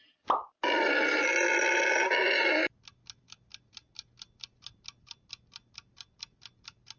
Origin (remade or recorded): recorded